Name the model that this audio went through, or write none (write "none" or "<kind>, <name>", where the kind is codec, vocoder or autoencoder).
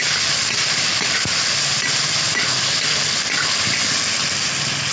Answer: none